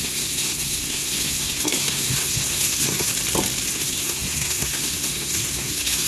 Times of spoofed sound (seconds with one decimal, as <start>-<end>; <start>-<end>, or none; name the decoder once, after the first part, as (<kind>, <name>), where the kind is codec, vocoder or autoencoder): 0.0-3.1 (codec, SNAC); 3.7-6.1